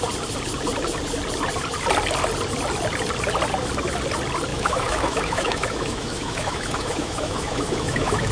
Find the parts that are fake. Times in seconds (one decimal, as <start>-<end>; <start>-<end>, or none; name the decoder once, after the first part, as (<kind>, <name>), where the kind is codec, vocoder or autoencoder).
4.5-8.3 (autoencoder, DAC-VAE)